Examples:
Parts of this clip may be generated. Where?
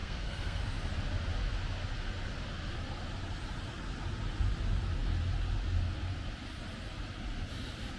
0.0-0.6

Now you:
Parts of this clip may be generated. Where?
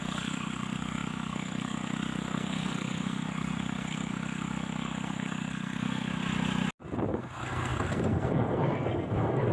0.0-6.1; 7.1-9.5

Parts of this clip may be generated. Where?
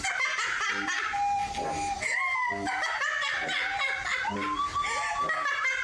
none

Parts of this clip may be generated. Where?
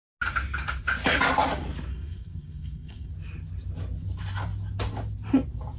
1.9-3.1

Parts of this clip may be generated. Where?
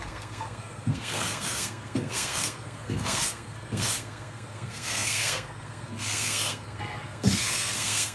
0.0-8.1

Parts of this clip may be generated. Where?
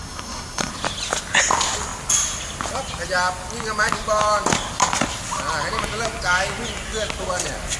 0.0-0.7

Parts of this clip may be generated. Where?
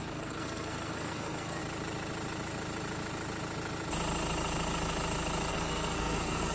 0.0-1.6; 5.5-6.5